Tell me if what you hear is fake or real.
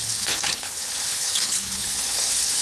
fake